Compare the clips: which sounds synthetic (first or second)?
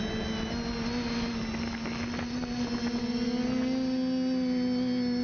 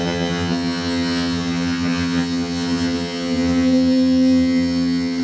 second